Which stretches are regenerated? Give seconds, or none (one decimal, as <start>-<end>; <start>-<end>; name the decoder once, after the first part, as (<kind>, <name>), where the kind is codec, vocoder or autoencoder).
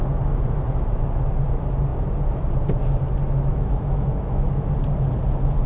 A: 3.5-4.4 (autoencoder, DAC-VAE)